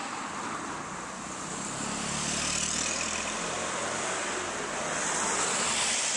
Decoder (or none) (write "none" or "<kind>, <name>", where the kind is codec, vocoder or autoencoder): vocoder, BigVGAN v2